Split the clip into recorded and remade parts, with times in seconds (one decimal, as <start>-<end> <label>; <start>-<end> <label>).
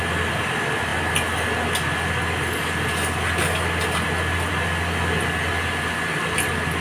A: 0.0-6.8 recorded